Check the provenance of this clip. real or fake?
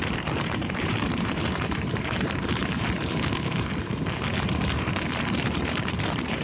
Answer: fake